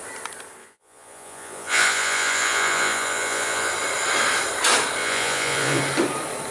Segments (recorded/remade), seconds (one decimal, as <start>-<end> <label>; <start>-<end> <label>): 0.0-0.6 recorded; 0.6-3.7 remade; 3.7-5.0 recorded; 5.0-5.8 remade; 5.8-6.5 recorded

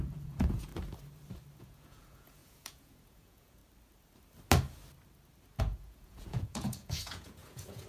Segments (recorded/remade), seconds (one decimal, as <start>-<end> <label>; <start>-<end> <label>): 0.0-0.7 remade; 0.7-1.6 recorded; 1.6-3.6 remade; 3.6-5.6 recorded; 5.6-7.9 remade

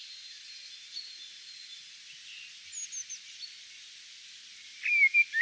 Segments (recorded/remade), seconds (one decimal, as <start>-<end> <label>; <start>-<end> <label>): 0.0-5.4 recorded